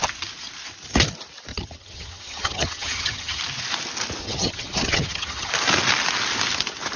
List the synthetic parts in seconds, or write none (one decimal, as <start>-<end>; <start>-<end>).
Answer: 1.5-3.4; 4.2-5.5